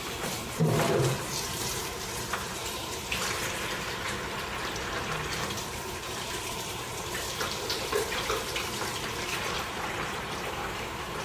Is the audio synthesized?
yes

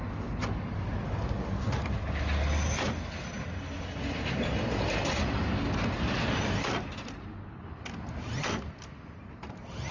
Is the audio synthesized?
no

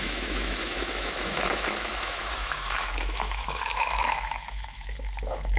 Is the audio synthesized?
yes